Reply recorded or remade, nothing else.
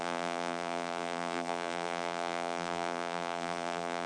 remade